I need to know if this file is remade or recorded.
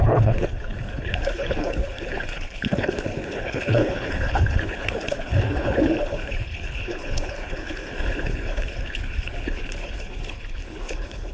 remade